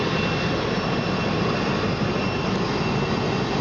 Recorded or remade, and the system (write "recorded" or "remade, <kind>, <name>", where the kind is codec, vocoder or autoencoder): recorded